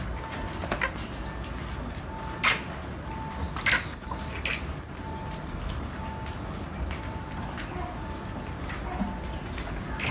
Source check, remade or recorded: recorded